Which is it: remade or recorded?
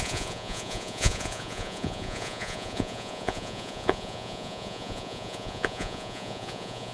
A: remade